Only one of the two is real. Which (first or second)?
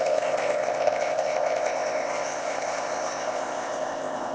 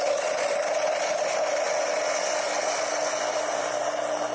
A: second